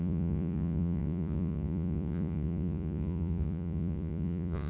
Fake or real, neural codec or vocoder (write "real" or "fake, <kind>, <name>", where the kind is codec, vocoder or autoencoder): fake, vocoder, Vocos